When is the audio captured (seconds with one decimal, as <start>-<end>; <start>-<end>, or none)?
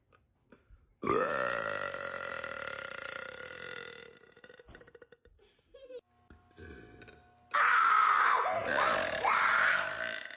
0.0-10.4